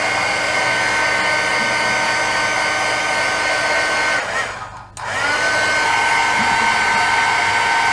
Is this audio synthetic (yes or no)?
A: no